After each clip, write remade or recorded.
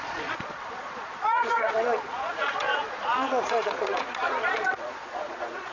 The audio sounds remade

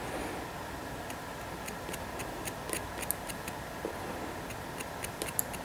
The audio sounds recorded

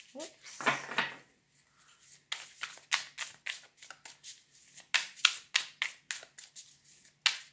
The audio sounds recorded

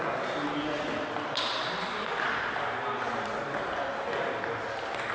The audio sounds recorded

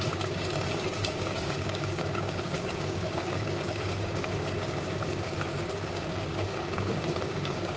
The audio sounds remade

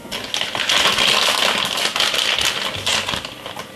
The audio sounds recorded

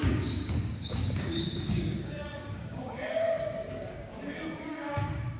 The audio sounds remade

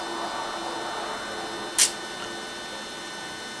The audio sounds recorded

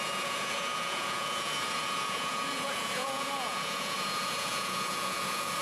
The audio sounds remade